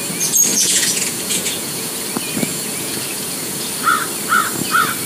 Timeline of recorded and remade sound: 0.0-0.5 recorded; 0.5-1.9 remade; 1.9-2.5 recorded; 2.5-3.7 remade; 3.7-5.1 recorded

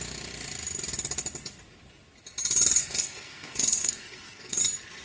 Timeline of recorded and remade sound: 0.0-2.8 recorded; 2.8-4.6 remade; 4.6-5.0 recorded